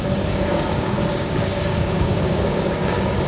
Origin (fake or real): fake